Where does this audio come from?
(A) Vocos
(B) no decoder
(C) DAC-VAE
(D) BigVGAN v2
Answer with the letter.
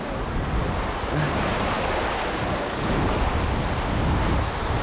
B